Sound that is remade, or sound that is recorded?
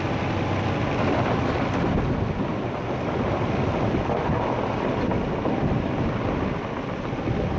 recorded